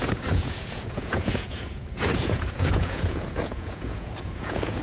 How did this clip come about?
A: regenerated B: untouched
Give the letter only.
A